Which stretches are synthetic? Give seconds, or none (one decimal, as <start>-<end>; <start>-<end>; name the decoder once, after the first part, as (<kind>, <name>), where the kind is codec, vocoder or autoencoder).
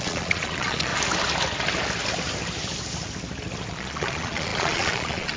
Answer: 0.0-0.9 (vocoder, Vocos); 3.7-5.4